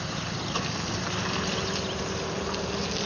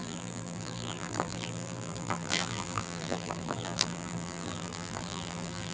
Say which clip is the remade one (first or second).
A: second